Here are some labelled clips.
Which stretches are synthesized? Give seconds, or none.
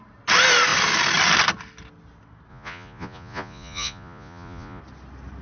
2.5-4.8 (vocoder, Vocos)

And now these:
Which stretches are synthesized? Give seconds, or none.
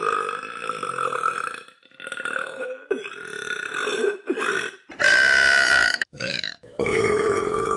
5.8-7.8 (autoencoder, DAC-VAE)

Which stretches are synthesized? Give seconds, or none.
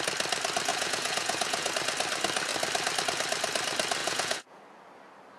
0.7-1.7 (vocoder, Vocos); 4.0-4.6